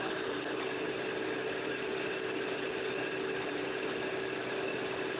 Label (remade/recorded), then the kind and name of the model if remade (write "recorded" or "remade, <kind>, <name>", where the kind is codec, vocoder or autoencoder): recorded